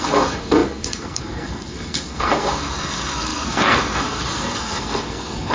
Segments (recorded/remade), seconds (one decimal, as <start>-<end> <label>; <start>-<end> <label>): 0.0-5.5 remade